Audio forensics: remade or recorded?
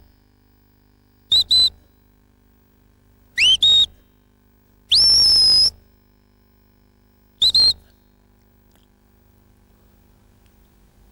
recorded